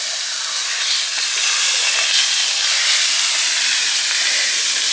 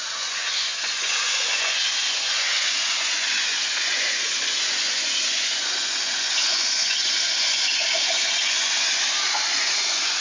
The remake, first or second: second